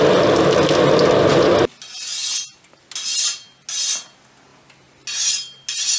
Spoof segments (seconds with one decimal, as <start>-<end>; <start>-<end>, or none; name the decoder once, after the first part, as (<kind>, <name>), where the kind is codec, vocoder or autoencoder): none